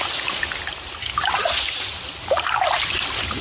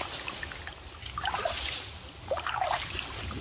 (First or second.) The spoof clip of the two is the second